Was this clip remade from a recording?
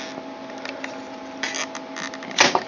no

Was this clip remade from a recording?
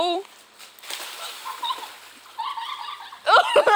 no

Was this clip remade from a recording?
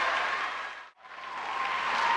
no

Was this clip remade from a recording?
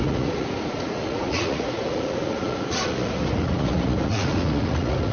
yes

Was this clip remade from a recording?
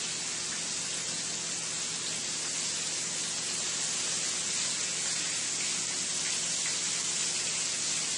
no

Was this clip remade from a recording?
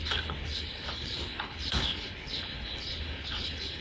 yes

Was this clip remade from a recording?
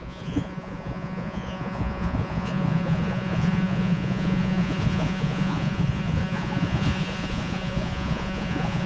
yes